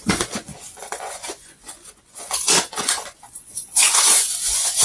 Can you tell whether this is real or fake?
fake